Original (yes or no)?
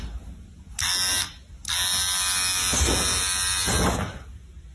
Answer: yes